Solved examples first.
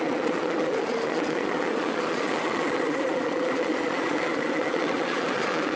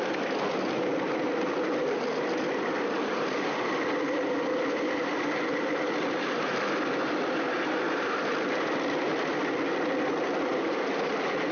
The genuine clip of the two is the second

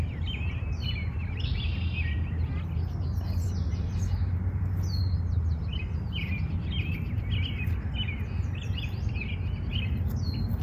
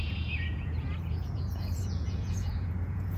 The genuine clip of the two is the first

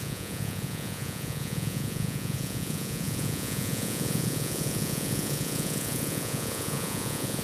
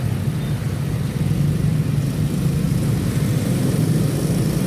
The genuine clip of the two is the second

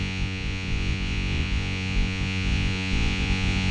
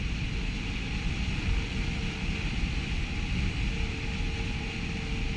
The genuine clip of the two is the second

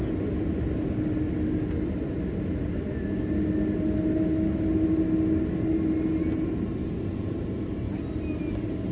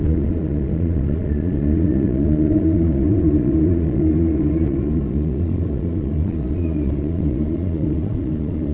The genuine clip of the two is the first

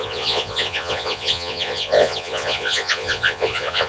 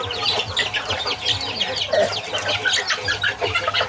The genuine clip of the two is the second